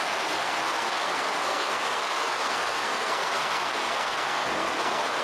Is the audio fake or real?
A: fake